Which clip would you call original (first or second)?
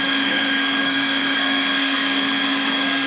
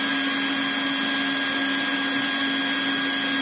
second